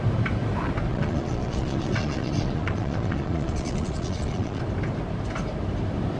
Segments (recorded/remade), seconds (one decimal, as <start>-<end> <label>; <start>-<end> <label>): 0.0-0.9 recorded; 0.9-4.6 remade; 4.6-6.2 recorded